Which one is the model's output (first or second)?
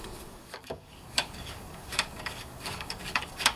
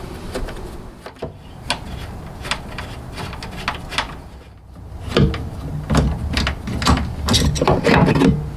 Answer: first